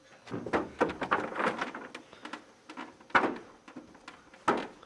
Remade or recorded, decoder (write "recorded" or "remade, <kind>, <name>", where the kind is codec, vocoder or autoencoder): recorded